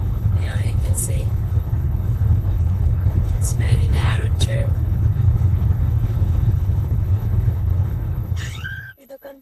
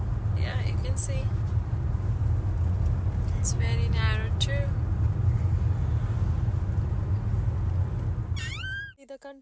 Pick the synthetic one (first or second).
first